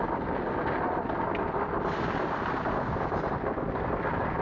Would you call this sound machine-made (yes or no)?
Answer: no